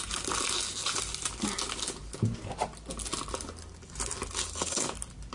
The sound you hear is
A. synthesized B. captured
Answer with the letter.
B